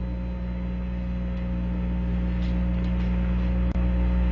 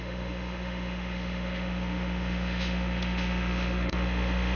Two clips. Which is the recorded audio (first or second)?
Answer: first